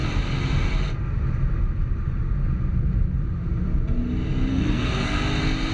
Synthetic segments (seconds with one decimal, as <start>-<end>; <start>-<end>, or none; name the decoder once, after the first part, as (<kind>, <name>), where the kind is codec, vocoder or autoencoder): 4.5-5.2 (codec, SNAC)